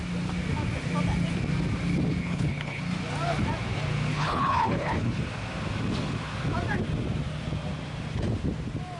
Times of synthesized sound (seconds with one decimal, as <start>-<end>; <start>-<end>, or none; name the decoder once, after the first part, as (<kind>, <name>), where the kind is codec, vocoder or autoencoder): 2.2-2.8 (codec, HILCodec); 4.1-5.2